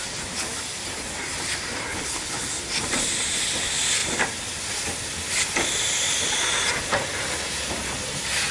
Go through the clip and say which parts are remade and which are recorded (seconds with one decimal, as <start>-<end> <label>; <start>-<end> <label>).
0.0-1.9 recorded; 1.9-2.5 remade; 2.5-8.5 recorded